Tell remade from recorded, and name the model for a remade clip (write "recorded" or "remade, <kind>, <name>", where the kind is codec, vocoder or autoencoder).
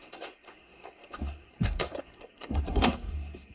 remade, codec, SNAC